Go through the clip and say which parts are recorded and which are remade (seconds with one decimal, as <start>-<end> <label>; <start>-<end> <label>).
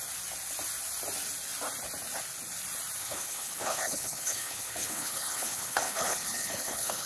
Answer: 0.0-3.0 recorded; 3.0-7.1 remade